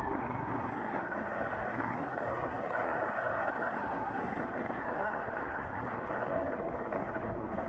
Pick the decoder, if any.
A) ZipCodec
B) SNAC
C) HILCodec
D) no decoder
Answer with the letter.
B